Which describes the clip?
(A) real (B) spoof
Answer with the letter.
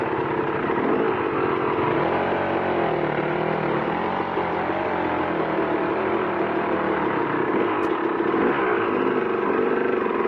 A